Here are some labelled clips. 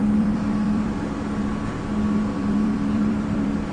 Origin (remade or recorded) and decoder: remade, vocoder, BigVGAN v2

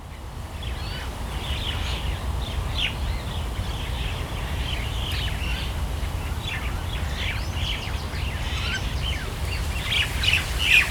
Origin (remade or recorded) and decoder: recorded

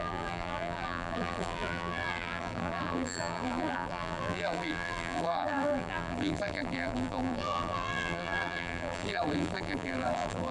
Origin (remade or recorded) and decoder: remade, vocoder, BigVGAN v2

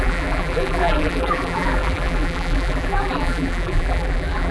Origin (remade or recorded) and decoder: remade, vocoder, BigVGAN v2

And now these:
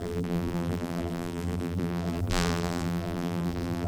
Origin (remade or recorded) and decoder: remade, vocoder, BigVGAN v2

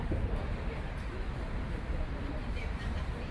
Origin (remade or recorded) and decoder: remade, vocoder, BigVGAN v2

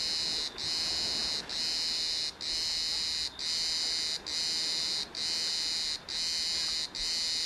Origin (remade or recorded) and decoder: recorded